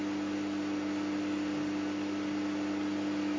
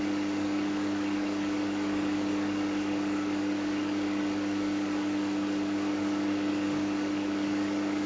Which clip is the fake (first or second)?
second